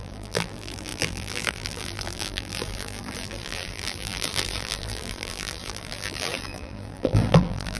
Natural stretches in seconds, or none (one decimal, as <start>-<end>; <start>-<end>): none